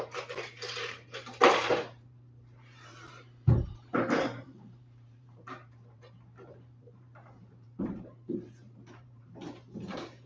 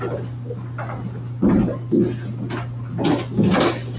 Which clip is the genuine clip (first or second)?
second